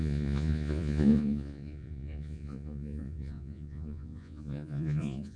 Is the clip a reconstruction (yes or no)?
yes